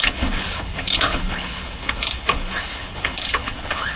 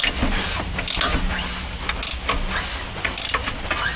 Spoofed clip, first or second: first